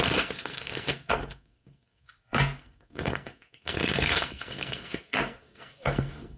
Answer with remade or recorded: remade